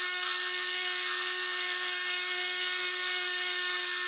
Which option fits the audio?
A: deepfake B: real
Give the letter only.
A